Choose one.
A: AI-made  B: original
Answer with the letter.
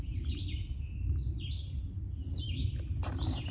B